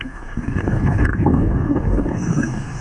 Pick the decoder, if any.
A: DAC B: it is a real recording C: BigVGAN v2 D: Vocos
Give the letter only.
A